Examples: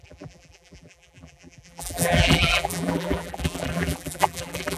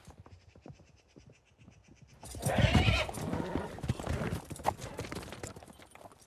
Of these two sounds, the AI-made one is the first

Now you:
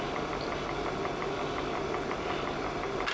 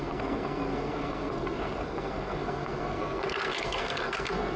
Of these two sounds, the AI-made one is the second